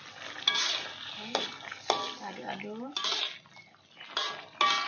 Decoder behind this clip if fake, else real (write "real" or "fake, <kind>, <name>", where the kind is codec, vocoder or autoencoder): real